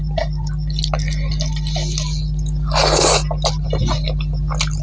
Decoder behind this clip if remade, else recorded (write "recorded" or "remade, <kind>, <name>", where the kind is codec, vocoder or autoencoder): recorded